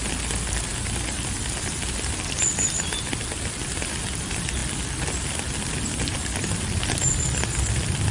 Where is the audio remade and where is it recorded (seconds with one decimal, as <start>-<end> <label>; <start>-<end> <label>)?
0.0-8.1 recorded